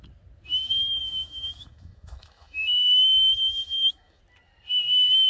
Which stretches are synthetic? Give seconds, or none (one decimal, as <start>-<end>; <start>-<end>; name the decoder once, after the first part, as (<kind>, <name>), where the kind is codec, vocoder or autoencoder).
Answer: 1.0-4.2 (autoencoder, DAC-VAE)